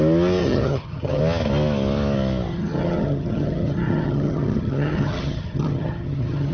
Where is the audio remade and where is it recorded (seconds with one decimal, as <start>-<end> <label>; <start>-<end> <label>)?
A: 0.0-0.4 recorded; 0.4-1.2 remade; 1.2-2.5 recorded; 2.5-6.5 remade